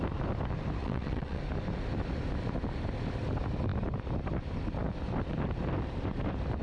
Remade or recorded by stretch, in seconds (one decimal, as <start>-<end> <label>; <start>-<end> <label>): 0.0-0.8 recorded; 0.8-1.4 remade; 1.4-6.6 recorded